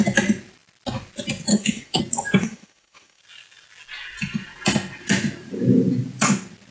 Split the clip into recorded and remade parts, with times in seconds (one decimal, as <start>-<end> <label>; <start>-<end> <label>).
0.0-1.5 recorded; 1.5-2.0 remade; 2.0-2.4 recorded; 2.4-3.2 remade; 3.2-6.7 recorded

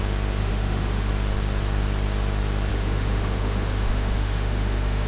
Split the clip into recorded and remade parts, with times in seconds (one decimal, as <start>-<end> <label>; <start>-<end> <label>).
0.0-0.4 recorded; 0.4-1.1 remade; 1.1-2.7 recorded; 2.7-5.1 remade

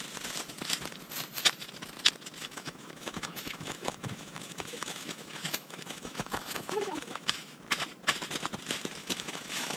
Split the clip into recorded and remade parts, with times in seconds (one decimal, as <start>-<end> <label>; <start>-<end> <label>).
0.0-2.4 recorded; 2.4-7.6 remade; 7.6-9.0 recorded; 9.0-9.8 remade

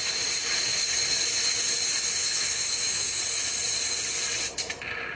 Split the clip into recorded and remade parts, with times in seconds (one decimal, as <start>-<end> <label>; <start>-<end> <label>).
0.0-2.2 recorded; 2.2-3.2 remade; 3.2-5.2 recorded